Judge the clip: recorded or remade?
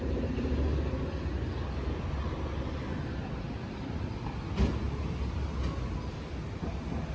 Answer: recorded